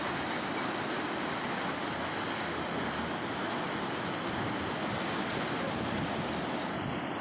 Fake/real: real